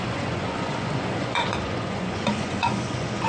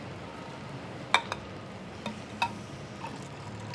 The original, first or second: second